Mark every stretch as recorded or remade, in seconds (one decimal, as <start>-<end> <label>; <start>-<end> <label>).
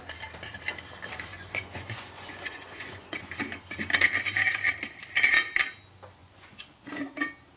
0.0-1.3 recorded; 1.3-3.3 remade; 3.3-6.2 recorded; 6.2-7.1 remade; 7.1-7.6 recorded